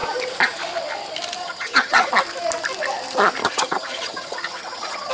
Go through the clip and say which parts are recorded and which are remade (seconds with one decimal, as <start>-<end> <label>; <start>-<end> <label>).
0.0-1.4 recorded; 1.4-2.1 remade; 2.1-3.4 recorded; 3.4-5.1 remade